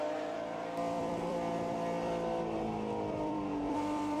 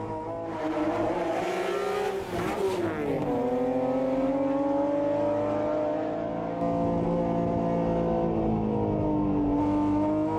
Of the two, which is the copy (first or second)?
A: first